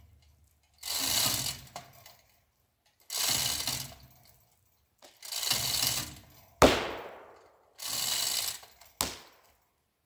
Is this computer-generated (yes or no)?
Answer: no